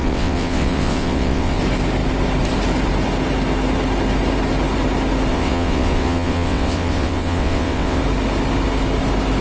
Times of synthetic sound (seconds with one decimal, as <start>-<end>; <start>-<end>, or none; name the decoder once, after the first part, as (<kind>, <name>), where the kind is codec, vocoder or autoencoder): 0.0-1.6 (vocoder, WaveNeXt); 5.3-8.0